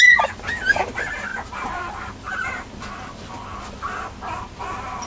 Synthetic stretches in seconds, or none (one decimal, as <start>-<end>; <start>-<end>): none